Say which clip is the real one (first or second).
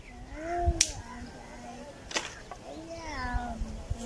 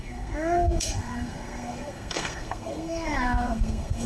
first